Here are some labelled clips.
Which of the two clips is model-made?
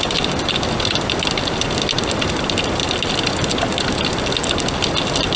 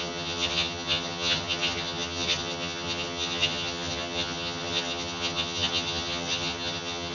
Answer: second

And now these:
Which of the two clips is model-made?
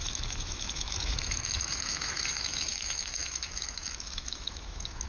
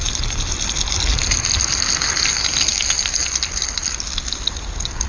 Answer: first